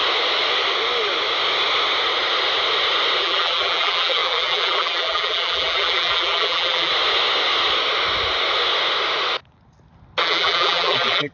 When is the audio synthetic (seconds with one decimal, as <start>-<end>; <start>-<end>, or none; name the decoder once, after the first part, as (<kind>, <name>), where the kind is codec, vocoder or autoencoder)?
3.2-6.9 (vocoder, BigVGAN v2); 10.2-11.3

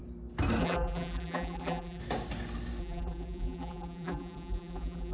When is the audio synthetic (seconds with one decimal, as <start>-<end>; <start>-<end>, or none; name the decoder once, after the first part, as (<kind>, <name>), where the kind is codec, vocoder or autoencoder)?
0.6-2.0 (vocoder, BigVGAN v2); 2.8-5.1